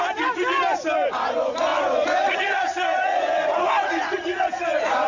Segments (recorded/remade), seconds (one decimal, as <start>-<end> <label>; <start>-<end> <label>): 0.0-1.7 recorded; 1.7-5.1 remade